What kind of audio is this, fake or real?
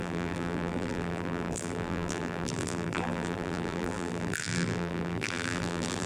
fake